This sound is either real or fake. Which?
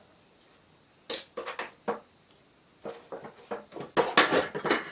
real